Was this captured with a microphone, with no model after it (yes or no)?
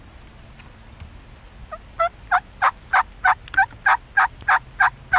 yes